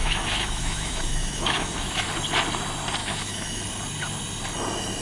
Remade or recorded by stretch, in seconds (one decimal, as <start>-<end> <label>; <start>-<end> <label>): 0.0-2.1 remade; 2.1-3.0 recorded; 3.0-3.6 remade; 3.6-5.0 recorded